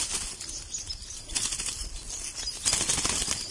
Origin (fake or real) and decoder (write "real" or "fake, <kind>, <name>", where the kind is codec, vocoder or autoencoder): real